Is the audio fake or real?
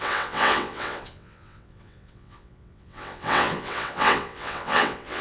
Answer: fake